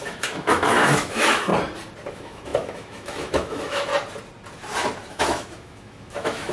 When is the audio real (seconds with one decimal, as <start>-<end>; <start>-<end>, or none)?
1.5-2.1; 3.9-5.1